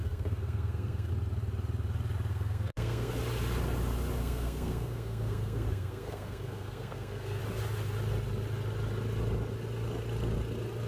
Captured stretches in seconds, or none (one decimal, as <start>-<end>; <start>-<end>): 1.1-2.3; 3.1-4.2; 7.4-10.9